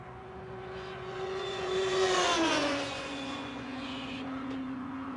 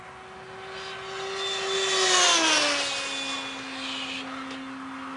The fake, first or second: first